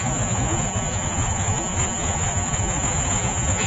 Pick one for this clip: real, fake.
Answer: fake